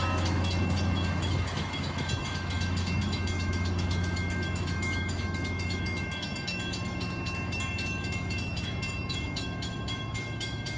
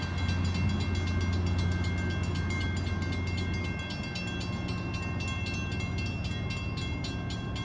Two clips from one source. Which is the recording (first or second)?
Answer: second